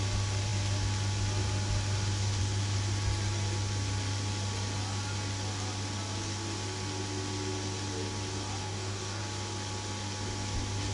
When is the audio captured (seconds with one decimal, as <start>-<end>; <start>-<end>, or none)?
0.0-8.6; 9.2-10.9